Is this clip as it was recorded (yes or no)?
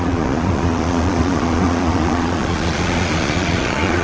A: no